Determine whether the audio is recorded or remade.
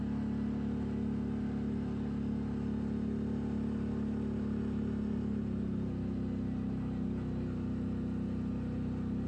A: recorded